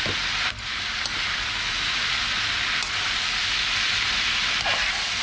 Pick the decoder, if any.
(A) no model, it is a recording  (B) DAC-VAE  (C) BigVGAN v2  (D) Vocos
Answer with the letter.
A